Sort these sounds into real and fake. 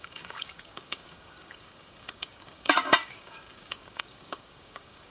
fake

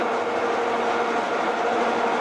real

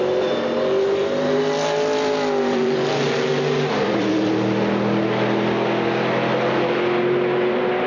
real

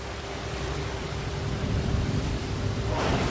fake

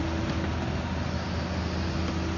real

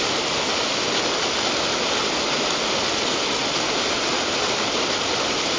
real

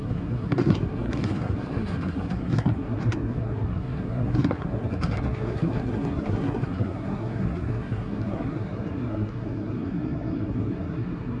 fake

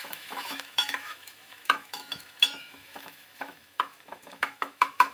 fake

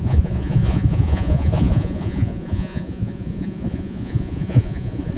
fake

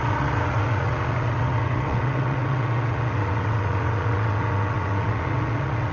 fake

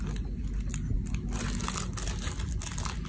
real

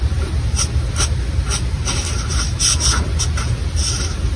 real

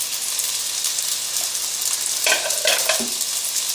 real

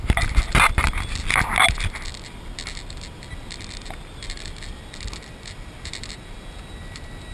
real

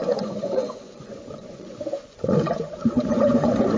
fake